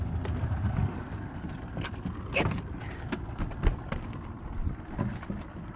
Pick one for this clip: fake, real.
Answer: real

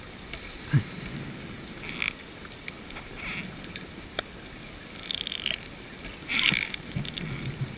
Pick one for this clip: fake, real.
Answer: real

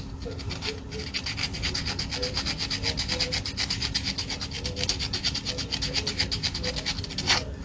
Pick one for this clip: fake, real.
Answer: real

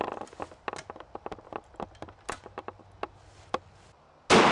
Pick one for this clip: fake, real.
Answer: real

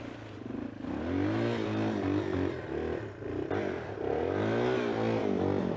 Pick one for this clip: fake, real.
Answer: real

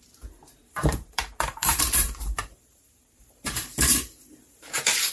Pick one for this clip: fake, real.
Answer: fake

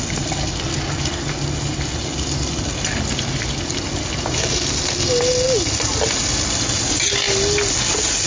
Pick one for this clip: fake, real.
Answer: real